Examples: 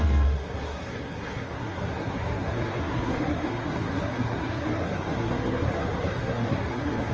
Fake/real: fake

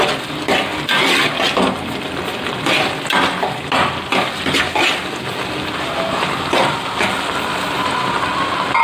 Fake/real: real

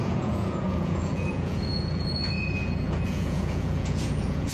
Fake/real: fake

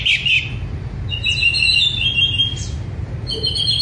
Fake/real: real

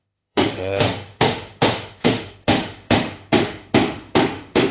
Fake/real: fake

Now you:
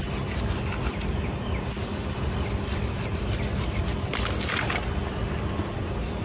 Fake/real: real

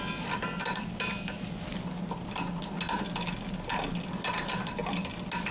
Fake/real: real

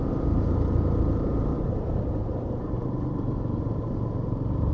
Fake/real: fake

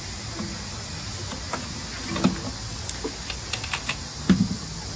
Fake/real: real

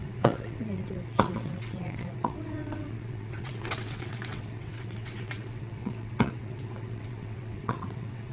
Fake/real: fake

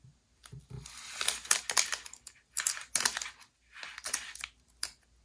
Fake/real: real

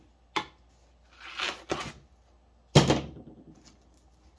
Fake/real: real